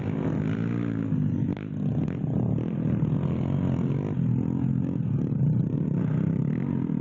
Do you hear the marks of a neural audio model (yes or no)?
no